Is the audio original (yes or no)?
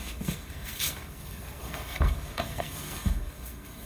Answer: no